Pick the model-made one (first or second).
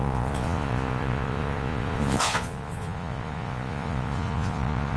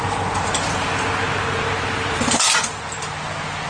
first